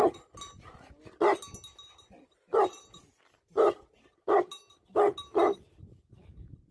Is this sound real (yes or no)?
yes